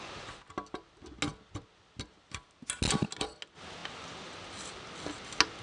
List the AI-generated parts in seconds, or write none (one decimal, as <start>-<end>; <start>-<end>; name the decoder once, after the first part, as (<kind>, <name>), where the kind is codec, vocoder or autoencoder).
none